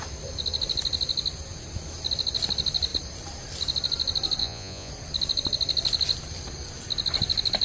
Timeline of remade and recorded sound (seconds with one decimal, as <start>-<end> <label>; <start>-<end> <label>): 0.0-4.4 recorded; 4.4-4.9 remade; 4.9-7.6 recorded